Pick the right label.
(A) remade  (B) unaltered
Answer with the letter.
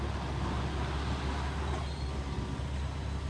B